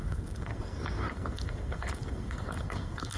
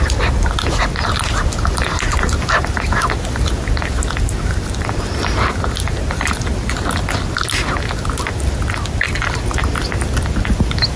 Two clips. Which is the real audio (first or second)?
second